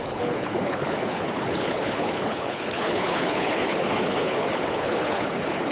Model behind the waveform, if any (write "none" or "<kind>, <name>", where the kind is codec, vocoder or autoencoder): codec, HILCodec